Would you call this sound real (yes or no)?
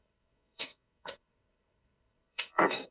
no